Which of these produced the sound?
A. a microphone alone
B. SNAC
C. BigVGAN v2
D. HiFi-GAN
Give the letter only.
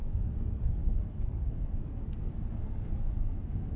B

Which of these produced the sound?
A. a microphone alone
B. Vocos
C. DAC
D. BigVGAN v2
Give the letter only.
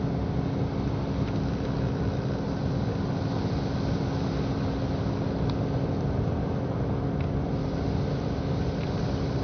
A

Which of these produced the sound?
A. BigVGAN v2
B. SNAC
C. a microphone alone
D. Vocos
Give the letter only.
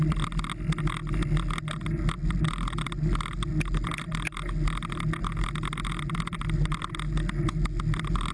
C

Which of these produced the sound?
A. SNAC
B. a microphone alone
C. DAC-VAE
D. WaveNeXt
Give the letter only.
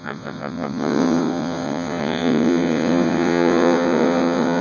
D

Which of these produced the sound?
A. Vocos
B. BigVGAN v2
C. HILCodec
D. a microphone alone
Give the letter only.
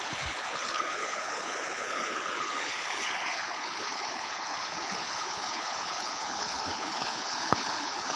C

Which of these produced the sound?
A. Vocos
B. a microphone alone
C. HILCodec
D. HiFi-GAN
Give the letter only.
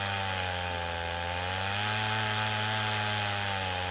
B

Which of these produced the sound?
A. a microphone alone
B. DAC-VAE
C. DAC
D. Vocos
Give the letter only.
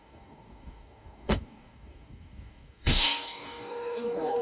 C